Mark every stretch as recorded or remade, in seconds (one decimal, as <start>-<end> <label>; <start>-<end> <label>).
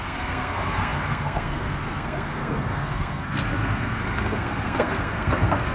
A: 0.0-5.7 remade